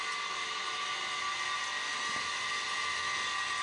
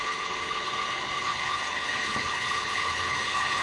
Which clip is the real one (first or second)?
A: first